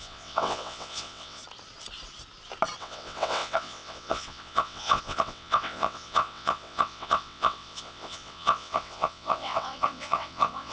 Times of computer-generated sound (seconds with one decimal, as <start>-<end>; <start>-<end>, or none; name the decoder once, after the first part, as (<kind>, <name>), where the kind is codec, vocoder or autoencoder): 0.0-1.4 (vocoder, WaveNeXt); 2.8-10.7